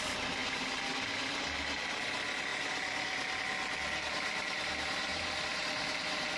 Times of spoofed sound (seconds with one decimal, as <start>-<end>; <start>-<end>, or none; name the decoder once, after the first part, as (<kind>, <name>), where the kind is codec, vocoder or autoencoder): none